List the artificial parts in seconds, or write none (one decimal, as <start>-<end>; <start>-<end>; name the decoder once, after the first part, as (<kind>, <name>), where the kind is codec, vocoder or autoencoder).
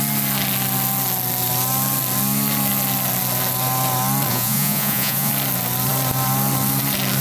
4.3-5.3 (vocoder, Vocos)